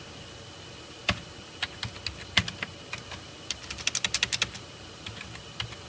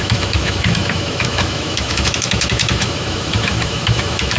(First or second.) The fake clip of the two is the second